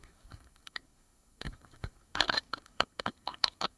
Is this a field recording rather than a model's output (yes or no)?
no